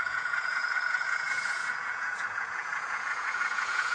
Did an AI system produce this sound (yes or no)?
yes